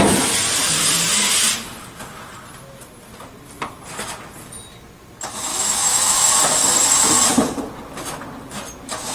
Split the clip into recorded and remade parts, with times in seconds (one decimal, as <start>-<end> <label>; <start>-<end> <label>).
0.0-5.5 recorded; 5.5-6.3 remade; 6.3-9.1 recorded

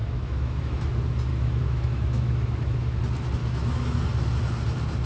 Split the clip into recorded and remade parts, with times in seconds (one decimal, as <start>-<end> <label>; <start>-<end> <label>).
0.0-0.9 remade; 0.9-1.3 recorded; 1.3-3.0 remade; 3.0-3.4 recorded; 3.4-4.0 remade; 4.0-5.1 recorded

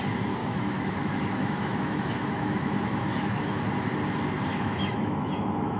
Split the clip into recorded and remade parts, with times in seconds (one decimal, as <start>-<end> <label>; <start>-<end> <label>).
0.0-0.4 recorded; 0.4-3.6 remade; 3.6-4.5 recorded; 4.5-5.8 remade

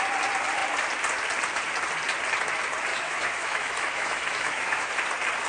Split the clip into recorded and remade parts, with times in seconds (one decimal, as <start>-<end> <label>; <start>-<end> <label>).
0.0-2.9 recorded; 2.9-4.9 remade; 4.9-5.5 recorded

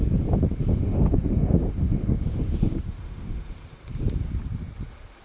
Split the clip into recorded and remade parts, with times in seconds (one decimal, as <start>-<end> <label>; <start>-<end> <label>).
0.0-0.7 recorded; 0.7-3.8 remade; 3.8-5.2 recorded

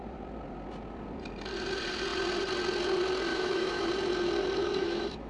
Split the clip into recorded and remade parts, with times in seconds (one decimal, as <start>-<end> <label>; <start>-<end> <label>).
0.0-3.3 recorded; 3.3-3.9 remade; 3.9-4.6 recorded; 4.6-5.3 remade

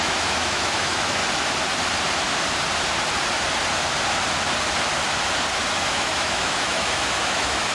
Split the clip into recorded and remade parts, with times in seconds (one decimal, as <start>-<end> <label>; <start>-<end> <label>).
0.0-1.2 remade; 1.2-5.8 recorded; 5.8-7.7 remade